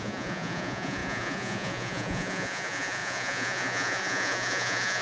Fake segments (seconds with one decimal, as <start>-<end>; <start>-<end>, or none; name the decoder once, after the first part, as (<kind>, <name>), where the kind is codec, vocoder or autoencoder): 0.0-5.0 (vocoder, Vocos)